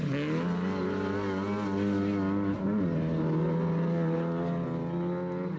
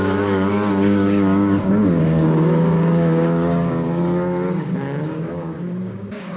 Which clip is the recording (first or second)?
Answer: first